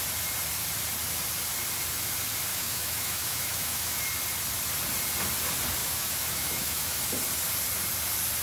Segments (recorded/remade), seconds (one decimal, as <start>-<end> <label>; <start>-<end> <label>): 0.0-2.5 recorded; 2.5-4.0 remade; 4.0-5.8 recorded; 5.8-7.0 remade; 7.0-8.4 recorded